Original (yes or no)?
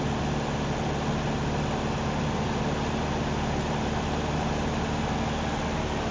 yes